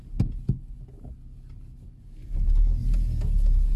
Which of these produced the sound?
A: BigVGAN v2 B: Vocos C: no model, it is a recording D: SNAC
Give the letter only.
C